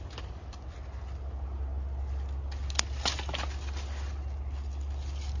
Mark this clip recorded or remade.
recorded